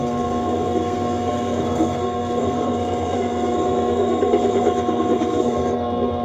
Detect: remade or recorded remade